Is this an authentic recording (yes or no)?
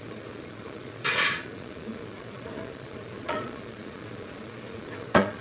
no